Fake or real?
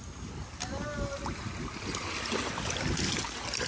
real